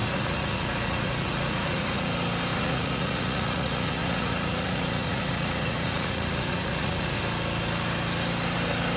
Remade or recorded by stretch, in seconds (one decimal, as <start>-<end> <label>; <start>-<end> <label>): 0.0-2.1 remade; 2.1-2.5 recorded; 2.5-7.2 remade; 7.2-9.0 recorded